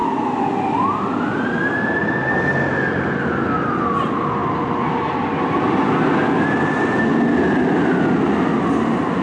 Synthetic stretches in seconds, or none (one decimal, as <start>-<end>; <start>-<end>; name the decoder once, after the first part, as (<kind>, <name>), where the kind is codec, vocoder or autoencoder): none